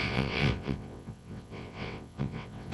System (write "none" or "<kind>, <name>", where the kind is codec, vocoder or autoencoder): vocoder, WaveNeXt